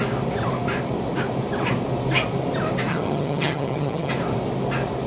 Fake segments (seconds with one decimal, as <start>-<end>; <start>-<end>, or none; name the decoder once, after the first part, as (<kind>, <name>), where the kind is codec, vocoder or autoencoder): 2.9-4.1 (vocoder, HiFi-GAN)